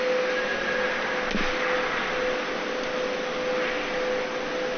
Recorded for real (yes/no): yes